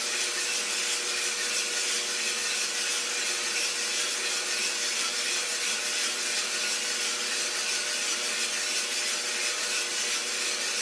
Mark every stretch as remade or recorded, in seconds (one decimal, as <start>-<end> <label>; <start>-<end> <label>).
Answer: 0.0-10.8 recorded